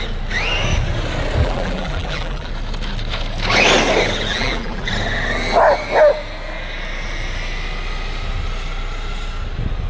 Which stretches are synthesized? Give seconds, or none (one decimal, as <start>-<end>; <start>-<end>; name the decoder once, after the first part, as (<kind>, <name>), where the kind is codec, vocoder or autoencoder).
1.4-2.5 (vocoder, BigVGAN v2); 4.3-4.9